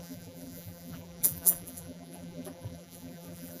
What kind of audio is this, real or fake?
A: fake